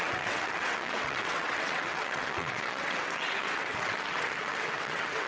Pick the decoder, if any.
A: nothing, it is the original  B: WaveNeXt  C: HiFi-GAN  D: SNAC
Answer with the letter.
B